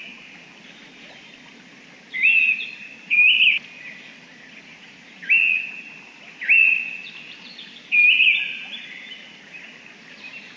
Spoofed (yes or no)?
no